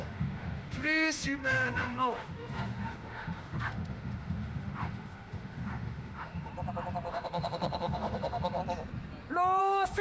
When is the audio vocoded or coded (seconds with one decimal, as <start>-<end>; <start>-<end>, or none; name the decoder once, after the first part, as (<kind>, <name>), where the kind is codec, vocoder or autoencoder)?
0.0-6.5 (autoencoder, DAC-VAE); 7.1-8.6; 9.6-10.0